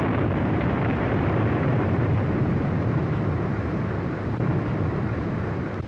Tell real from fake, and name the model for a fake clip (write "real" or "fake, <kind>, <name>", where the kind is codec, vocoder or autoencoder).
fake, vocoder, BigVGAN v2